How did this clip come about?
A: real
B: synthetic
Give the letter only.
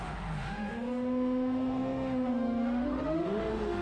B